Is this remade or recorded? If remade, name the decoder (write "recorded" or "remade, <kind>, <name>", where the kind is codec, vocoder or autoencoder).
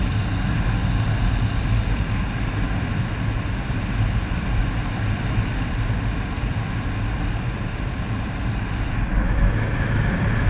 recorded